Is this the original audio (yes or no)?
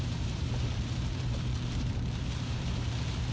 no